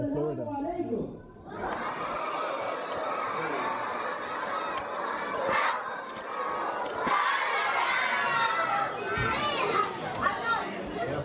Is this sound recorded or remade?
remade